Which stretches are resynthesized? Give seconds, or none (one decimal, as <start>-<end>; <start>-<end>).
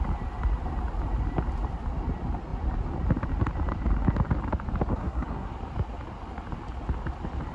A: 4.9-5.5